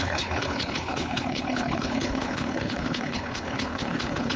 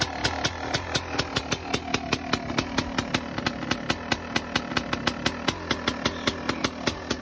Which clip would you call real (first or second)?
second